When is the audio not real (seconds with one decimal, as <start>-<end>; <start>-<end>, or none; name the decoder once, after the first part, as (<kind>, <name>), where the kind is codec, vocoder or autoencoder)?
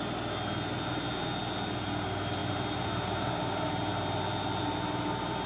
none